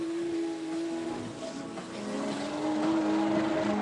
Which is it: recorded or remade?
recorded